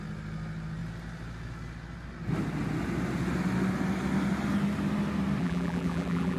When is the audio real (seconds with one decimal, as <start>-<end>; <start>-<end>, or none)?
0.0-5.4